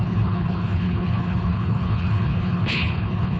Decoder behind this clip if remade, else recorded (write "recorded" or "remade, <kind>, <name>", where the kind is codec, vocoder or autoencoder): remade, codec, HILCodec